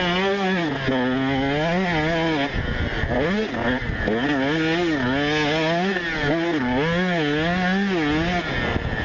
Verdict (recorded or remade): recorded